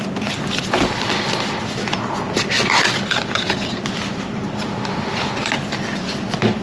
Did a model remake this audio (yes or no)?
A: no